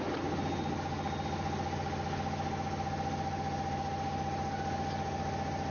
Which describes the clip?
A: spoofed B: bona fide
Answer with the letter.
B